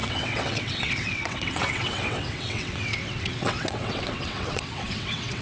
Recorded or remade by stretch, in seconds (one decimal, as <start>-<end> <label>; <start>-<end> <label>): 0.0-5.4 remade